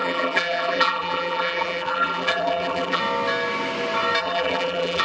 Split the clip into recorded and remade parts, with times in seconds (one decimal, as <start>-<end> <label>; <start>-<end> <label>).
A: 0.0-3.0 remade; 3.0-4.2 recorded; 4.2-5.0 remade